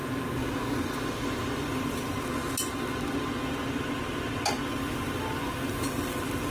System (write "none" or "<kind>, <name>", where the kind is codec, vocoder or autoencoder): none